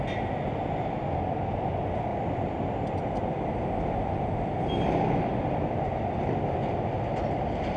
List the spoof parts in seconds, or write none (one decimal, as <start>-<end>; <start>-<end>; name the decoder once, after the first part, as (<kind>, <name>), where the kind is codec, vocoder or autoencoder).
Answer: 2.1-3.5 (vocoder, BigVGAN v2)